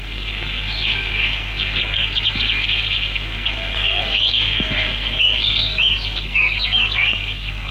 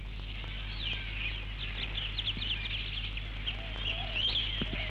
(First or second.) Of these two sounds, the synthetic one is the first